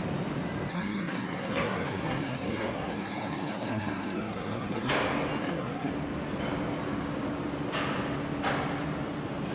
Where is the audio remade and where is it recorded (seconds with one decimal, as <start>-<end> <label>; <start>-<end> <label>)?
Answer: 0.0-0.7 recorded; 0.7-4.9 remade; 4.9-5.4 recorded; 5.4-5.9 remade; 5.9-9.5 recorded